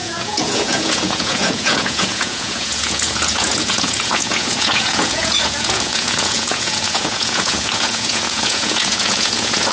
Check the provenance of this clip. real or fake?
fake